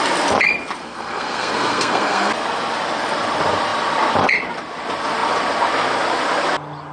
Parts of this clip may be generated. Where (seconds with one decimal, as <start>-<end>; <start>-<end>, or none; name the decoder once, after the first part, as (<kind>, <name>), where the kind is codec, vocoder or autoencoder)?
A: 0.8-2.3 (codec, SNAC)